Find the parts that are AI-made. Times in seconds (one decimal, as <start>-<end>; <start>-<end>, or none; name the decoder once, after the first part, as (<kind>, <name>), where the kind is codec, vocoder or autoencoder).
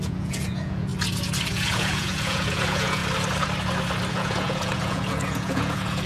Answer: 0.0-0.9 (vocoder, Vocos); 1.5-3.0; 4.1-6.1